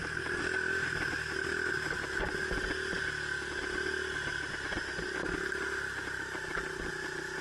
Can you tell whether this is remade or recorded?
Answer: recorded